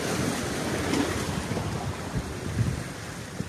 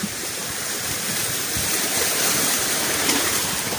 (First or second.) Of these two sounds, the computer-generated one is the second